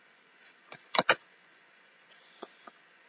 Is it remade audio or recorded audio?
remade